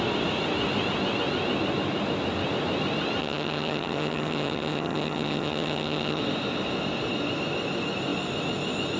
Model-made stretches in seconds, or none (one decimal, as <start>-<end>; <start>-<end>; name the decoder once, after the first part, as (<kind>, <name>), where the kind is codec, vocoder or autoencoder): 3.2-6.2 (vocoder, HiFi-GAN)